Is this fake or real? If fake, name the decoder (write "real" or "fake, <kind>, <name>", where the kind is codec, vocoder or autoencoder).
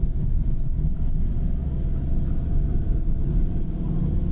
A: real